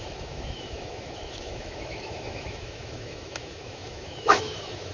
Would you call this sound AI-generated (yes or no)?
yes